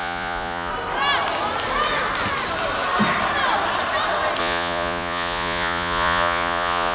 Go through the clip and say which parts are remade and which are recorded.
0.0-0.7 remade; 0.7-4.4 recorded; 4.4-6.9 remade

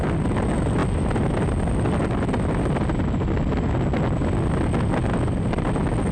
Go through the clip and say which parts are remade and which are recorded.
0.0-6.1 recorded

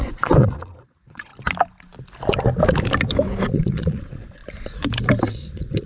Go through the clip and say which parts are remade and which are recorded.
0.0-1.3 remade; 1.3-3.5 recorded; 3.5-4.4 remade; 4.4-5.2 recorded; 5.2-5.9 remade

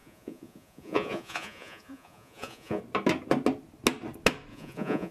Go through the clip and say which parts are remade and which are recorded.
0.0-2.8 remade; 2.8-4.5 recorded; 4.5-5.1 remade

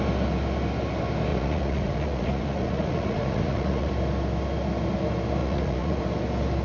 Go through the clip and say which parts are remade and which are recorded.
0.0-1.3 recorded; 1.3-3.9 remade; 3.9-5.4 recorded; 5.4-6.0 remade; 6.0-6.6 recorded